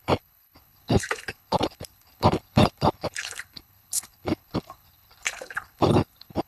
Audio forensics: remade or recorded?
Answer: remade